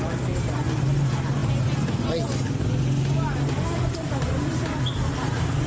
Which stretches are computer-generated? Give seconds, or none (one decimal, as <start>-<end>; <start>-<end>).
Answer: none